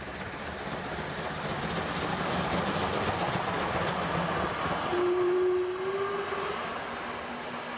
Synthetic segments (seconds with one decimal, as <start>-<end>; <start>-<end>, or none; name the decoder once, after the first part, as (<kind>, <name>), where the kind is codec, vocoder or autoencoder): 2.1-2.6 (codec, DAC)